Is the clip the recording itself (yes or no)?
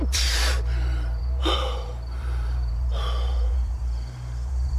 no